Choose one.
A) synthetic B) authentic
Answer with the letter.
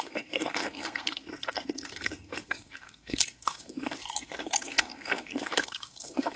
A